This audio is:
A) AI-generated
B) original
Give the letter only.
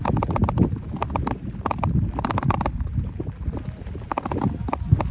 B